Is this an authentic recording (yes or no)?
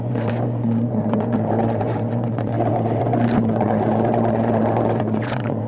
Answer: no